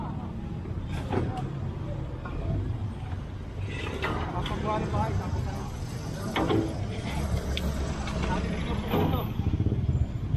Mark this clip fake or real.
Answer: real